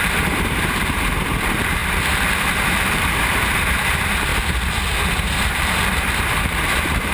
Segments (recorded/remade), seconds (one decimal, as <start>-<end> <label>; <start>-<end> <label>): 0.0-4.3 remade; 4.3-5.4 recorded; 5.4-7.1 remade